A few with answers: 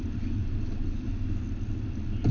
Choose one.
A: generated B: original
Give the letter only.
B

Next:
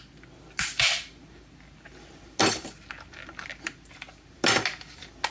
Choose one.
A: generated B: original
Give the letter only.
B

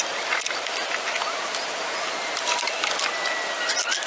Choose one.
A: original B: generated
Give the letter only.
A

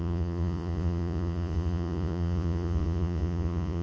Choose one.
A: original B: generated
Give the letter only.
B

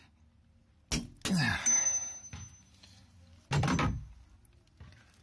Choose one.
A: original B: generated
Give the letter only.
A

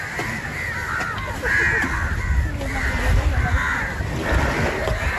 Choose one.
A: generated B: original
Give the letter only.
B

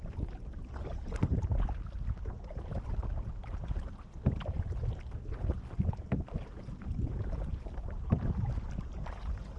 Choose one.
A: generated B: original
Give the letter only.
B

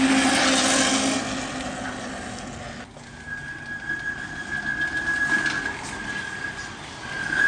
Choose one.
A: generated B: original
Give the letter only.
B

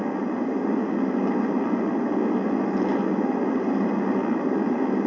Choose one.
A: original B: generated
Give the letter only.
A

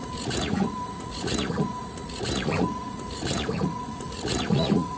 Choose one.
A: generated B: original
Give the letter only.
A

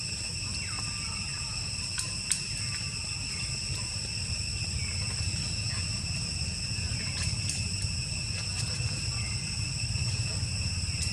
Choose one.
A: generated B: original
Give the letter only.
B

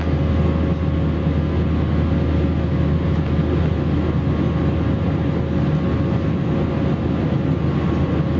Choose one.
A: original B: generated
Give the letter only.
A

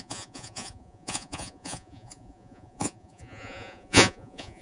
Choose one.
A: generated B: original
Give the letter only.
A